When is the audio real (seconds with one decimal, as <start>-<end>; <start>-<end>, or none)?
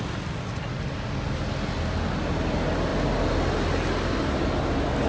0.0-5.1